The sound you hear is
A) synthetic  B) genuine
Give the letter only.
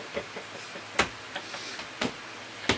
B